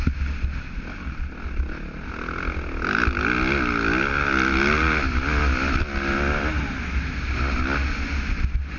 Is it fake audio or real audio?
real